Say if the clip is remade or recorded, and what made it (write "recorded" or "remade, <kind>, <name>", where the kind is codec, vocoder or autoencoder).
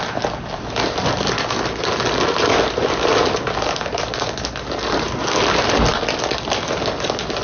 recorded